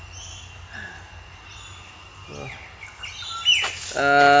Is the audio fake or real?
real